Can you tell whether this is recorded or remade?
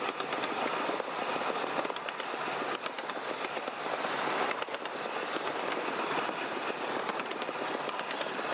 recorded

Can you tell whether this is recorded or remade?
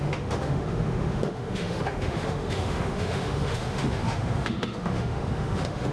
remade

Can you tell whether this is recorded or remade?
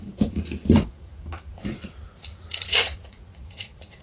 remade